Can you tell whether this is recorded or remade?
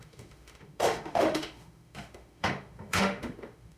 remade